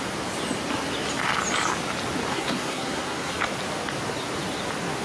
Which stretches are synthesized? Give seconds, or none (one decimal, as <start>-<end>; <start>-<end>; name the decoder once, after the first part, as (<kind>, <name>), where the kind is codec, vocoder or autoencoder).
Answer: 2.3-3.3 (codec, SNAC)